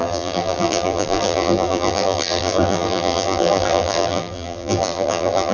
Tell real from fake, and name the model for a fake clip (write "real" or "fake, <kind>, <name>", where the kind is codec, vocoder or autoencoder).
fake, vocoder, BigVGAN v2